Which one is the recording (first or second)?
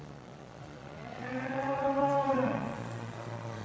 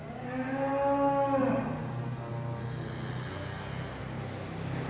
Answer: second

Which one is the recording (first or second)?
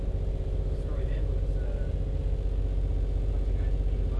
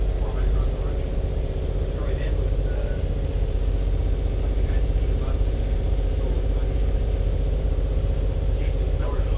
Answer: first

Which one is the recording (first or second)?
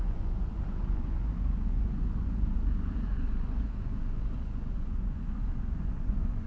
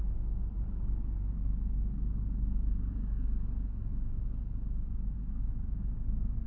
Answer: second